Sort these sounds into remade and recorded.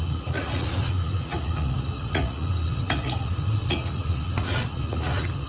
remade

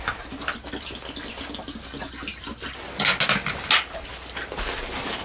recorded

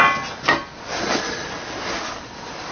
recorded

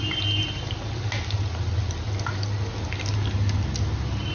recorded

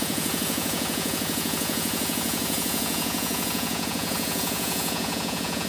remade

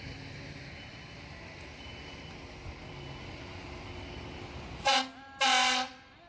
recorded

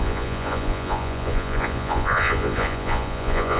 remade